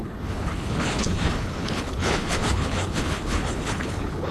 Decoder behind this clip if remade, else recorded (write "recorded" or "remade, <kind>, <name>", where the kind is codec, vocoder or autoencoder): remade, codec, HILCodec